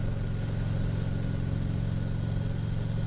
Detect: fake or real real